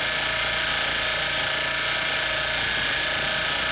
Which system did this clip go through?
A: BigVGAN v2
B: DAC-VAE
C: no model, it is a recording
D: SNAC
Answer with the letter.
C